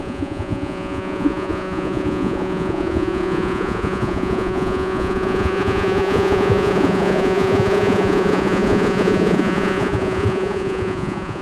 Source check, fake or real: fake